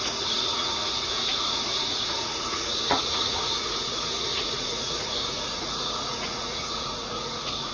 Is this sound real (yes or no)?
no